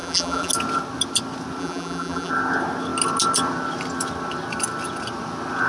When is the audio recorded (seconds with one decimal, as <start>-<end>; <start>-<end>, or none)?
0.5-1.6; 2.3-5.7